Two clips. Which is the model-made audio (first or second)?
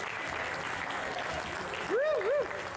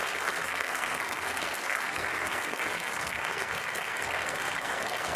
second